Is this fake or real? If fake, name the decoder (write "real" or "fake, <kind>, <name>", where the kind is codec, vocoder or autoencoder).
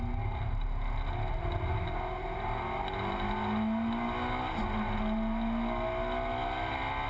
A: real